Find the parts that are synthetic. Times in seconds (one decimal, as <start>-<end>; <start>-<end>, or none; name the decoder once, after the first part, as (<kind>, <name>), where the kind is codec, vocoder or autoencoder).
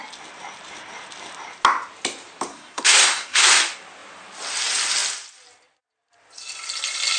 2.5-3.5 (codec, SNAC)